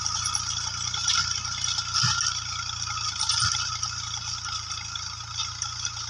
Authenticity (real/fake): real